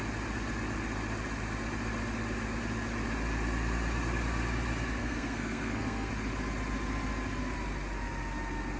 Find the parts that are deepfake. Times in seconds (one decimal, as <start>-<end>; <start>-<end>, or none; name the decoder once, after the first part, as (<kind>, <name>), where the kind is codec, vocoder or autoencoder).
5.0-6.1 (codec, SNAC)